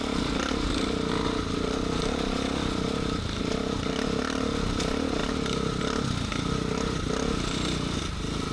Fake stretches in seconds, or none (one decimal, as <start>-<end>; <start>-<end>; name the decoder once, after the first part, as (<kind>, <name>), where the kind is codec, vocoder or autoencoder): none